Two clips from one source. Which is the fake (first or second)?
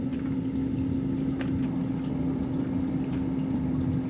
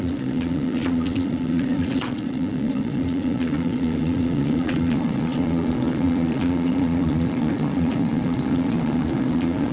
second